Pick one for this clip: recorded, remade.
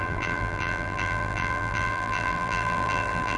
remade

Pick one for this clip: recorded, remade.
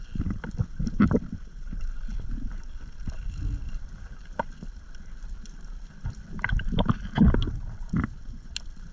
recorded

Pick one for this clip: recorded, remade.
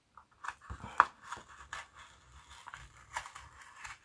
recorded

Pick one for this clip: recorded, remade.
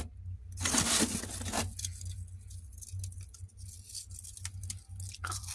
recorded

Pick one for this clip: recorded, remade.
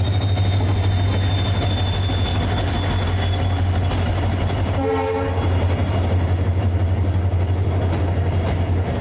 recorded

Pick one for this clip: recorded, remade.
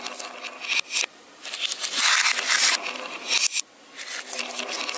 recorded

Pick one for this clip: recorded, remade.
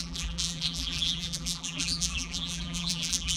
remade